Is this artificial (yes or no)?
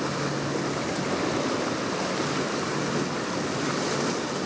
no